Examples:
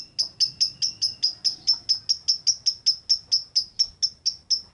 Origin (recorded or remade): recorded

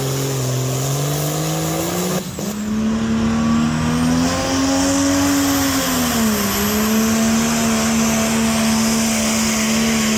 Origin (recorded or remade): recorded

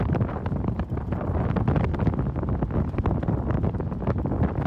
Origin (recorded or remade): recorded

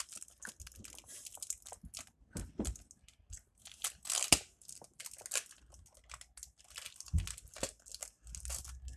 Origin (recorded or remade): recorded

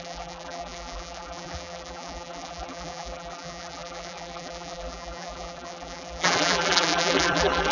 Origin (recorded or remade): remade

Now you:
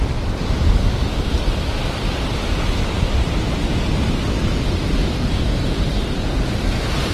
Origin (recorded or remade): recorded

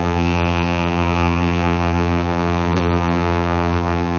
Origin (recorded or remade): remade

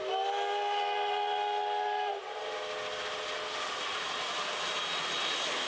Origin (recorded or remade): recorded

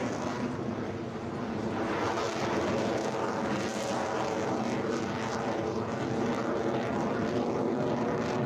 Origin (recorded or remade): recorded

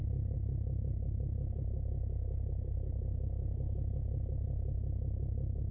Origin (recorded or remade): remade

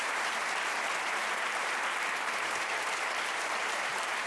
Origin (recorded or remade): remade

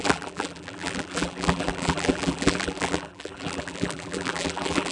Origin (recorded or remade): remade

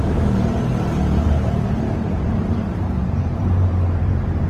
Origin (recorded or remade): remade